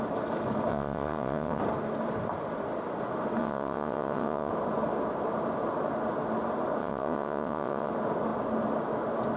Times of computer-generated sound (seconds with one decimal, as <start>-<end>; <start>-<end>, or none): 0.7-1.6; 3.4-4.5; 6.8-7.9